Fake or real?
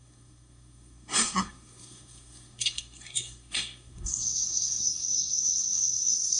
fake